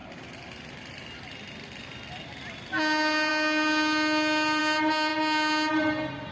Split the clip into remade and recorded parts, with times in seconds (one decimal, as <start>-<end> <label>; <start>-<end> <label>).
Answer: 0.0-6.3 recorded